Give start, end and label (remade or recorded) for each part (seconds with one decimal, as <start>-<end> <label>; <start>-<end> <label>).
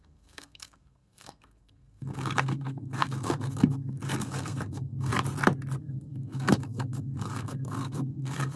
0.0-5.1 remade; 5.1-5.8 recorded; 5.8-8.6 remade